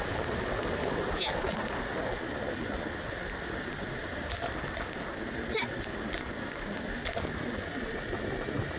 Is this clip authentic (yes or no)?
yes